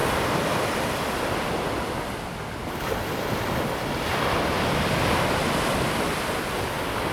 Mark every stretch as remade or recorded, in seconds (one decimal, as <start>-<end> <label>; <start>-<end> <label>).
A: 0.0-7.1 recorded